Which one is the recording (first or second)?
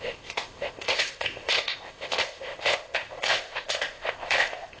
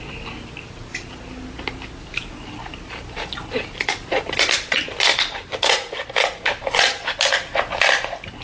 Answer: second